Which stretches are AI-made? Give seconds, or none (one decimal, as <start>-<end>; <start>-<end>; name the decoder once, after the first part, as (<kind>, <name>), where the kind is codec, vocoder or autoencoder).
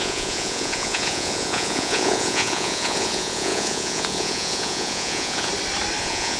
0.0-5.5 (vocoder, Vocos); 6.0-6.4